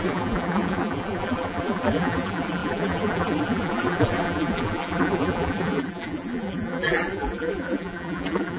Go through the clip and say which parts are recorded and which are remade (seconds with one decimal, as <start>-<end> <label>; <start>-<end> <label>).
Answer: 0.0-8.6 remade